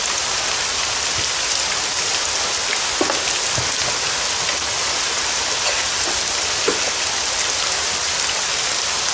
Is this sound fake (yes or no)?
no